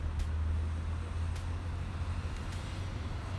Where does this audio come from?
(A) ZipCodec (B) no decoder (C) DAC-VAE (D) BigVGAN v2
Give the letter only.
B